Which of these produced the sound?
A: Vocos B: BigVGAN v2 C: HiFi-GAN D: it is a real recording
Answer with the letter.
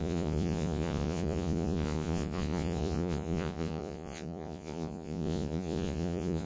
A